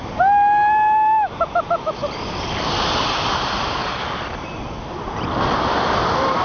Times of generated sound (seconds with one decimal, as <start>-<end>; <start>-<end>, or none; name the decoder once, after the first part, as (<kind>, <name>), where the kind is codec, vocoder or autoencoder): none